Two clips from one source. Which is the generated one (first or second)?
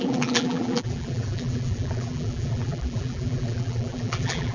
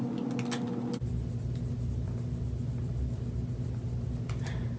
first